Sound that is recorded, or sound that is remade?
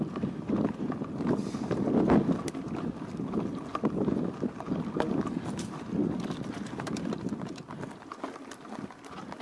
recorded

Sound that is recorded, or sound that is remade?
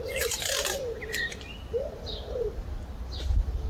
recorded